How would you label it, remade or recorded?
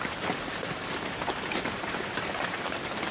remade